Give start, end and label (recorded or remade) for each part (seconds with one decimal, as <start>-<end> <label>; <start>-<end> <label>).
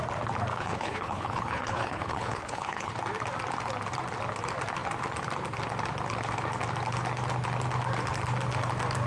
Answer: 0.0-0.5 recorded; 0.5-2.9 remade; 2.9-9.1 recorded